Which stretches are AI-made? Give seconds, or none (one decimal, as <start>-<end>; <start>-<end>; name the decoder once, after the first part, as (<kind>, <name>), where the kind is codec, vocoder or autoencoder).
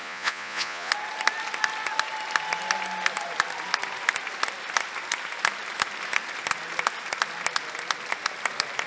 0.0-0.9 (vocoder, Vocos)